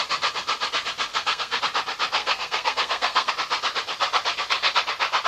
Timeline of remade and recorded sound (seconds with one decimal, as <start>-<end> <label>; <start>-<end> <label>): 0.0-1.1 recorded; 1.1-1.6 remade; 1.6-2.2 recorded; 2.2-3.3 remade; 3.3-5.3 recorded